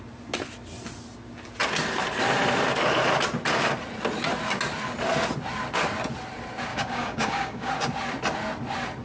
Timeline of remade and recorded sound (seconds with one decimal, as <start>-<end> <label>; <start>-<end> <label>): 0.0-6.7 recorded; 6.7-7.7 remade; 7.7-9.0 recorded